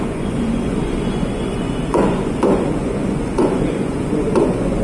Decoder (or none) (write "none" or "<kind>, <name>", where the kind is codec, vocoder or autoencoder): vocoder, Vocos